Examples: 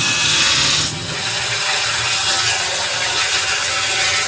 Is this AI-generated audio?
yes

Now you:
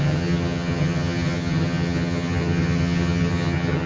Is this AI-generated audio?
yes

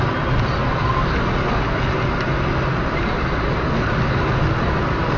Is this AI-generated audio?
no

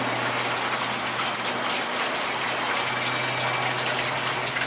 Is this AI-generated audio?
no